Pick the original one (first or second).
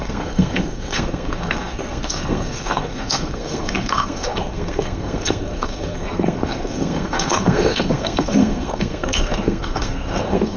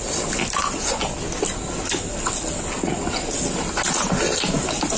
second